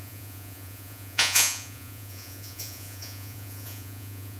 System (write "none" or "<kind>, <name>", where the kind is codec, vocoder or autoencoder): vocoder, Vocos